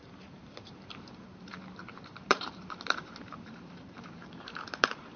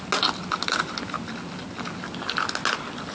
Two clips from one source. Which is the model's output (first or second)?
first